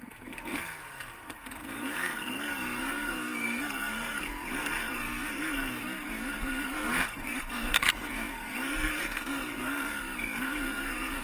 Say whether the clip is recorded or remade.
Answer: remade